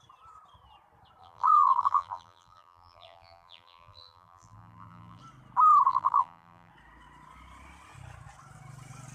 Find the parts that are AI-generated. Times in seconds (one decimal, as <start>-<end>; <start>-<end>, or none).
1.2-5.2; 5.9-6.7